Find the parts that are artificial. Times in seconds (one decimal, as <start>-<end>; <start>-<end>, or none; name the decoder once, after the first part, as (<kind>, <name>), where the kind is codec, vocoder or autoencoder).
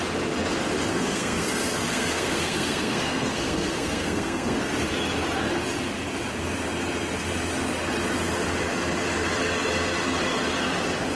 0.9-4.6 (codec, SNAC)